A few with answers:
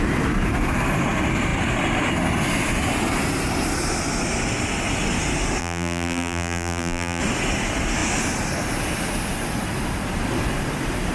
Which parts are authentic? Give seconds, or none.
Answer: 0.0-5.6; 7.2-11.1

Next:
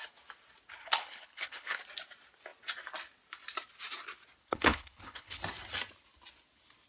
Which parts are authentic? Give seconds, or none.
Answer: 0.0-0.8; 1.8-4.4; 5.4-6.9

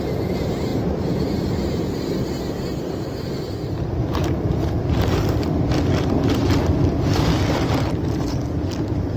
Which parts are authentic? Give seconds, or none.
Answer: 0.0-9.2

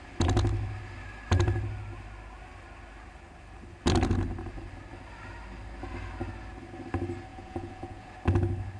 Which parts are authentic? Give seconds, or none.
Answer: 0.0-7.3; 8.1-8.8

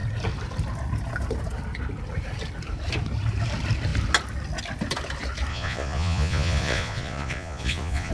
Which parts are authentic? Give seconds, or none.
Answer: 0.0-5.5

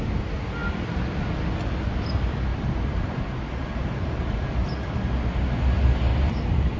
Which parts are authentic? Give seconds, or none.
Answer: 0.0-2.5; 4.9-6.1